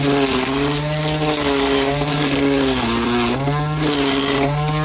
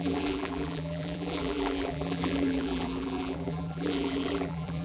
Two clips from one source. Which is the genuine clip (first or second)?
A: first